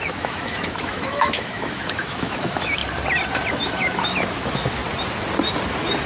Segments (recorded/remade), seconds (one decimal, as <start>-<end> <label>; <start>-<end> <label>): 0.0-2.8 remade; 2.8-3.5 recorded; 3.5-4.8 remade; 4.8-6.1 recorded

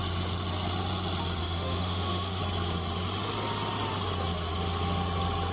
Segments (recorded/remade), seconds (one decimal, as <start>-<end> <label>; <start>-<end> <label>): 0.0-1.4 recorded; 1.4-2.4 remade; 2.4-5.5 recorded

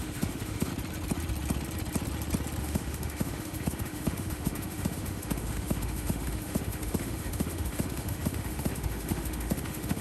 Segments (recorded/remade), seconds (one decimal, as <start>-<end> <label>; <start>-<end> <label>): 0.0-0.7 remade; 0.7-2.6 recorded; 2.6-10.0 remade

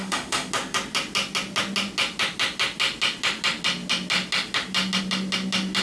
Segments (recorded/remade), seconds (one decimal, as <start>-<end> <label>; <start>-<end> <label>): 0.0-0.5 remade; 0.5-5.8 recorded